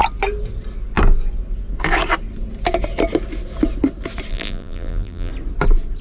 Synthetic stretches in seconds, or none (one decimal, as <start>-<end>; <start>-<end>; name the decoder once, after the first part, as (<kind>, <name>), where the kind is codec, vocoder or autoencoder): 4.3-5.3 (vocoder, BigVGAN v2)